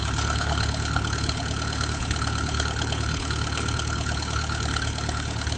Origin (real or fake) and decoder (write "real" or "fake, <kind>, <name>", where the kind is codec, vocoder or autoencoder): fake, codec, HILCodec